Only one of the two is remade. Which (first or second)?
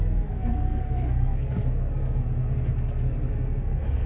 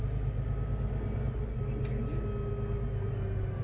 first